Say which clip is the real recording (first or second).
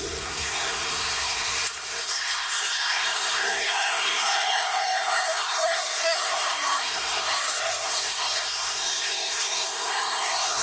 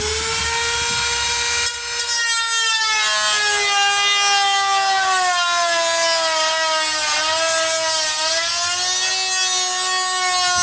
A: second